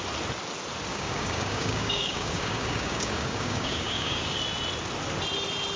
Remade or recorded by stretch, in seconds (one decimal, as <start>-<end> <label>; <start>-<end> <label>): 0.0-0.9 recorded; 0.9-4.4 remade; 4.4-5.8 recorded